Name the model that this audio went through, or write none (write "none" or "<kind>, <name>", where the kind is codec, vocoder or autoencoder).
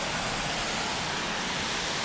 none